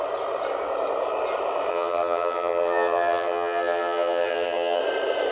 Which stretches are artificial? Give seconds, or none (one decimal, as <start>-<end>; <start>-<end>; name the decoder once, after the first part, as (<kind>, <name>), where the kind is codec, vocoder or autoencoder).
1.7-4.8 (vocoder, HiFi-GAN)